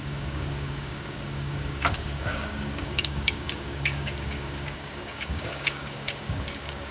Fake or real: fake